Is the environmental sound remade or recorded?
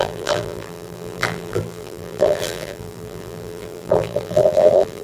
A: remade